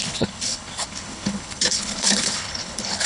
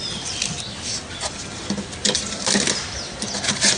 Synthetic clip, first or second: first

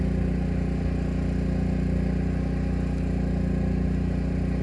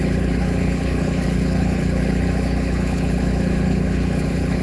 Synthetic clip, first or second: second